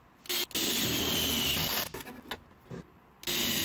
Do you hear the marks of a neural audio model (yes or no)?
no